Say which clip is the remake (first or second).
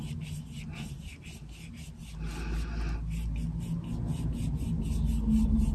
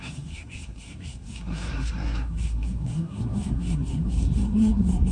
second